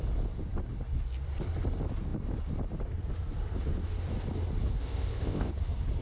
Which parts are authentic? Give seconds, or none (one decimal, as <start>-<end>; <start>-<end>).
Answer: 0.0-4.8; 5.5-6.0